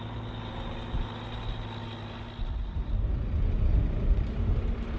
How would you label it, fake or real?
real